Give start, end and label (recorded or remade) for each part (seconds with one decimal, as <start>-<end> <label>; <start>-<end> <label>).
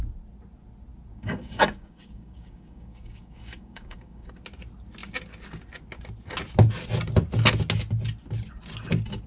0.0-1.1 recorded; 1.1-4.3 remade; 4.3-9.3 recorded